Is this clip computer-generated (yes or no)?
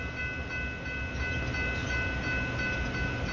no